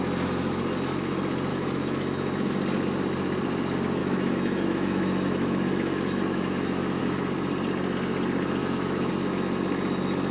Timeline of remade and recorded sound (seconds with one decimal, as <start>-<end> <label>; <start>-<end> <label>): 0.0-1.5 recorded; 1.5-2.5 remade; 2.5-4.0 recorded; 4.0-7.0 remade; 7.0-8.6 recorded; 8.6-9.1 remade; 9.1-10.3 recorded